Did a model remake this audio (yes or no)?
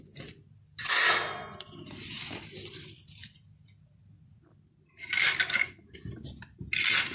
no